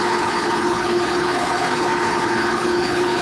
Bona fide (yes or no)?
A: no